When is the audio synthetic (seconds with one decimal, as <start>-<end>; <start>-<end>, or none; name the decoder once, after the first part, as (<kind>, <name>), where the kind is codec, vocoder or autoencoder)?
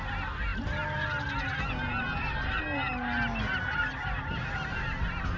none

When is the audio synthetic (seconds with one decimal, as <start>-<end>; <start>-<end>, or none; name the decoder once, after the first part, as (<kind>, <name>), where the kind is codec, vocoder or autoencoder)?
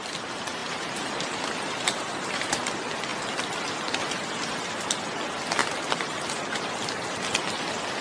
0.6-2.7 (vocoder, BigVGAN v2); 5.6-6.6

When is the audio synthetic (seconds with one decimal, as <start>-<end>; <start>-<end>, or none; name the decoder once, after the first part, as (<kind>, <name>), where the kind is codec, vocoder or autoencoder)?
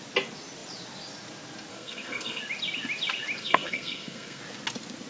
1.7-2.4 (codec, SNAC); 3.4-4.4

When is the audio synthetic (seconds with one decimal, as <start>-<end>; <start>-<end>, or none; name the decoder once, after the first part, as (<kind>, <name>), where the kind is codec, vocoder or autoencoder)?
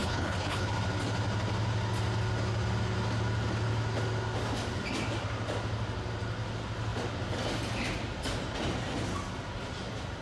0.0-0.7 (codec, HILCodec)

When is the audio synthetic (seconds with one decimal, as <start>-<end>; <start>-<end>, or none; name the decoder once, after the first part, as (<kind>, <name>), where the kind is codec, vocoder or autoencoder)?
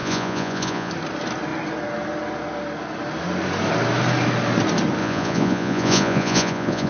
0.0-0.9 (vocoder, Vocos); 5.0-6.9